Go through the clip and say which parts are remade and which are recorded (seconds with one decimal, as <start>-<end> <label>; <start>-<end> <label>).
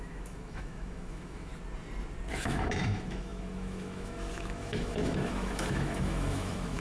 0.0-1.5 remade; 1.5-2.3 recorded; 2.3-6.8 remade